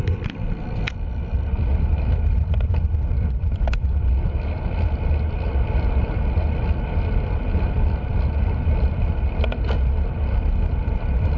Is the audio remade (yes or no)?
yes